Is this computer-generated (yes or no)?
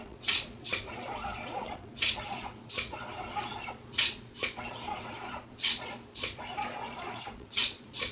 yes